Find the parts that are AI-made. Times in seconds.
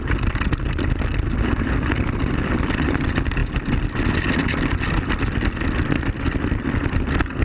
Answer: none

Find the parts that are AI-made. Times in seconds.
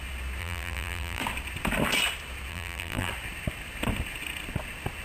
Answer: 0.4-1.2 (vocoder, BigVGAN v2); 2.5-3.1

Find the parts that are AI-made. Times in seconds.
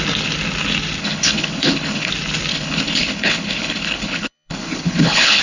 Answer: 1.0-2.1 (codec, HILCodec); 2.5-5.4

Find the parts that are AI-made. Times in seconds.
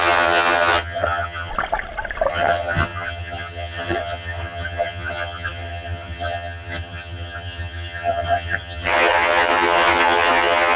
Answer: 0.0-1.5 (vocoder, HiFi-GAN); 2.3-10.8